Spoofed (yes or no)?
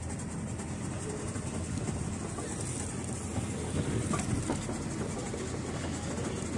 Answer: no